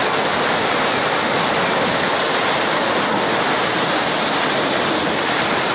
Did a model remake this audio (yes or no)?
no